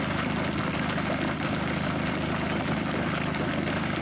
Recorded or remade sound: recorded